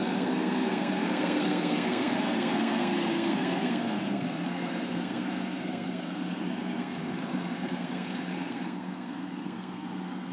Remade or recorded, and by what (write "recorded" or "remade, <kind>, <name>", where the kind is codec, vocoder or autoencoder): remade, codec, SNAC